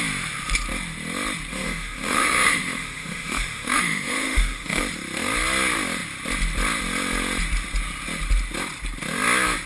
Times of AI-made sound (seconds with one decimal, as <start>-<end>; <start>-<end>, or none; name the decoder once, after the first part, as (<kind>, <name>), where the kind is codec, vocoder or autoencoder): 1.5-4.8 (autoencoder, DAC-VAE)